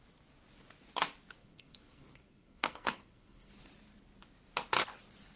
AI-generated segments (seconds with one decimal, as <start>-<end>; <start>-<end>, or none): 1.4-3.5